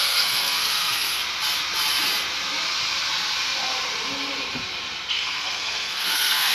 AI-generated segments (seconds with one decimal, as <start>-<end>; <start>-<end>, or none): 0.0-1.2; 5.1-6.5